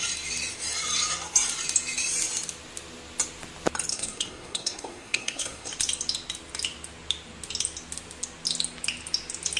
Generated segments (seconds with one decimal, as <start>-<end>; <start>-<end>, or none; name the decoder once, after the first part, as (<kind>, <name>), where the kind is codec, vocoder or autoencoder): 3.9-5.7 (codec, SNAC)